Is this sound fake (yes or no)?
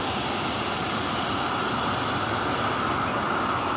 no